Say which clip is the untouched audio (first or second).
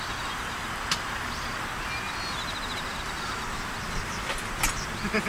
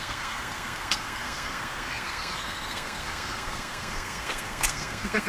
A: first